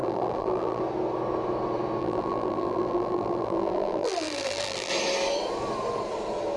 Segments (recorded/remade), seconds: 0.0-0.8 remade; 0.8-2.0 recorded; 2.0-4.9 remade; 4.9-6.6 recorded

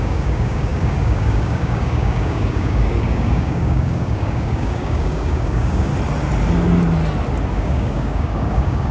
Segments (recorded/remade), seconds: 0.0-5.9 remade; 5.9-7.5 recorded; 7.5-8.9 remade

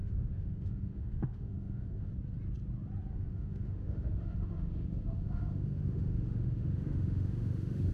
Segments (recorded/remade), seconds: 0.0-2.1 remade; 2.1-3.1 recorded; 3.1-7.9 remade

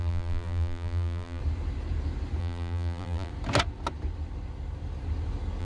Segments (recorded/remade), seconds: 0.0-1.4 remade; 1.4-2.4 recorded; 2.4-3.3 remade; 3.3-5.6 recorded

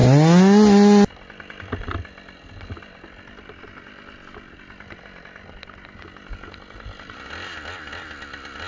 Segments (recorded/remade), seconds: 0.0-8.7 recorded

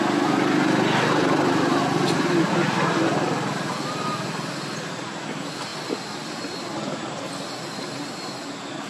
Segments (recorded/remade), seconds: 0.0-8.9 recorded

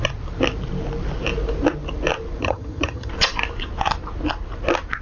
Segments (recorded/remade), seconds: 0.0-2.4 recorded; 2.4-3.1 remade; 3.1-5.0 recorded

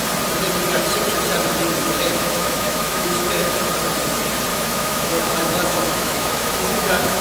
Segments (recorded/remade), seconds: 0.0-1.8 recorded; 1.8-3.6 remade; 3.6-4.5 recorded; 4.5-7.2 remade